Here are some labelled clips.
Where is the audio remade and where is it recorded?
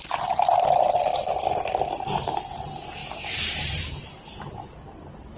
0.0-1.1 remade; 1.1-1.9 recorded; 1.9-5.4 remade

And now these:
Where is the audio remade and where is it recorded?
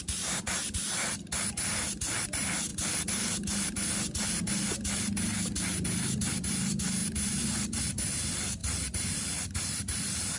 0.0-2.7 recorded; 2.7-3.8 remade; 3.8-8.6 recorded; 8.6-9.4 remade; 9.4-10.4 recorded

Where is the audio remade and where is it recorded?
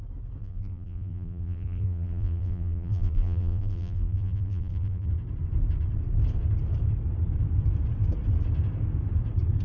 0.0-0.4 recorded; 0.4-5.1 remade; 5.1-9.6 recorded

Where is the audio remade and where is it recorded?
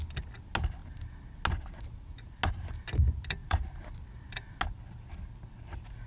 0.0-3.4 recorded; 3.4-4.3 remade; 4.3-6.1 recorded